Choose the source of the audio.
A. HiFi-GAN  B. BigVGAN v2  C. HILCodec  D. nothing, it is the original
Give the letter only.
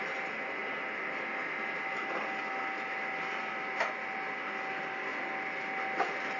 D